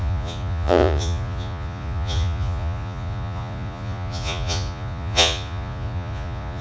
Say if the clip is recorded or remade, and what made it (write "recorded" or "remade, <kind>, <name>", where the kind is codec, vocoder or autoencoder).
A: remade, vocoder, Vocos